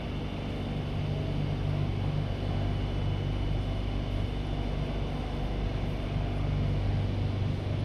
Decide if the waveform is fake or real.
real